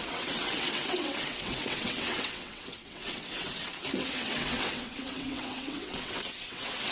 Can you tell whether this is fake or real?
fake